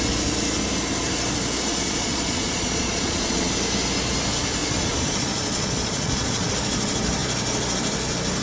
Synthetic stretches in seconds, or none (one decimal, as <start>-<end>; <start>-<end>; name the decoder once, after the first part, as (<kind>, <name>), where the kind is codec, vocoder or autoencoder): 1.7-3.5 (vocoder, Vocos); 4.6-6.5